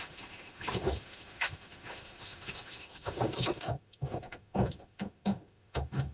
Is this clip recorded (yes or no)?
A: no